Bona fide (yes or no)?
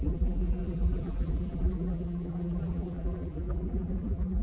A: no